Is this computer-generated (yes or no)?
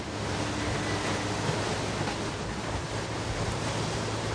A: no